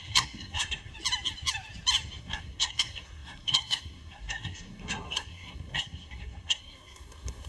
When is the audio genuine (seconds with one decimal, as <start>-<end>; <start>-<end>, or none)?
0.9-2.2